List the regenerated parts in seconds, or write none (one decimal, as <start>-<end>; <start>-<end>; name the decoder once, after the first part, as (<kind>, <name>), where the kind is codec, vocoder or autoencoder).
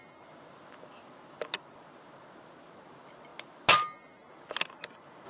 none